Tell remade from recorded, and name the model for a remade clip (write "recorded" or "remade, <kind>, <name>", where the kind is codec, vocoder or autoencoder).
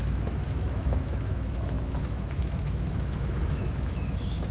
remade, autoencoder, DAC-VAE